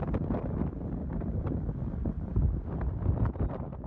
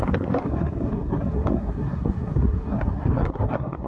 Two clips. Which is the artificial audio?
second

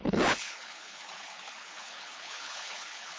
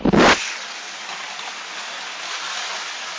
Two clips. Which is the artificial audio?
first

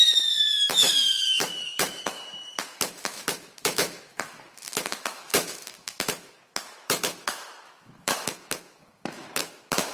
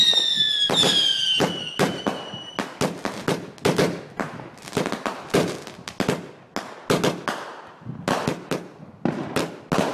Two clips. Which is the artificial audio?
first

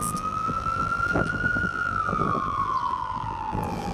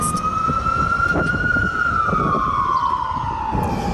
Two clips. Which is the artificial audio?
first